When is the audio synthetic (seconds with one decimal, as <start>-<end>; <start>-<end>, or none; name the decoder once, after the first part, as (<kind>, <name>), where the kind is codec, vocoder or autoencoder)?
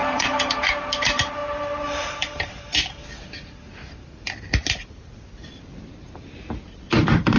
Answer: 0.0-3.0 (vocoder, BigVGAN v2); 6.9-7.4